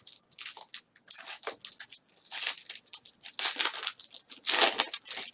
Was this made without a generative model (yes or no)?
yes